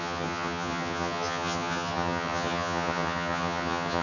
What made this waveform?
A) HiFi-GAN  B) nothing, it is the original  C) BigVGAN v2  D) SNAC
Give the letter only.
A